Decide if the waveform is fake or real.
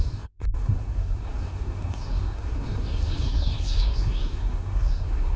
fake